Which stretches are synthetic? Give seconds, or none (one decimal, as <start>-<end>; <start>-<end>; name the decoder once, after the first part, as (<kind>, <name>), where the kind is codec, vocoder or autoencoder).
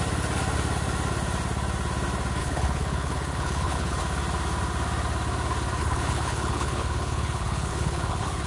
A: 2.4-4.0 (codec, HILCodec); 5.8-8.5